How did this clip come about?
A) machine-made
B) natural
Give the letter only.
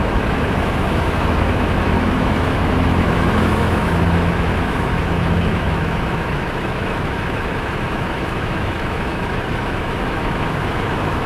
A